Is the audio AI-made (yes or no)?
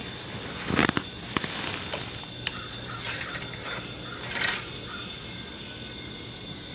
no